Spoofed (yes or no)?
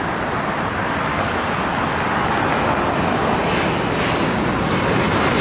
no